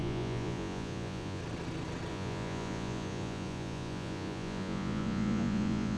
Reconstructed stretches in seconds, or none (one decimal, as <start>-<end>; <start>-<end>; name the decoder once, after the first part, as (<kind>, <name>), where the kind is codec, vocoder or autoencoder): 0.0-1.4 (vocoder, Vocos); 2.1-6.0